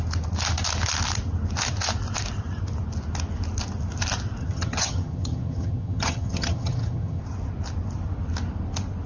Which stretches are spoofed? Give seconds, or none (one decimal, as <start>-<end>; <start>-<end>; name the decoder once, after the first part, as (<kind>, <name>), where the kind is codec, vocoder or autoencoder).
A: 4.4-7.2 (vocoder, HiFi-GAN)